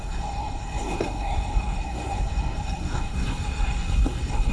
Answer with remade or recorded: remade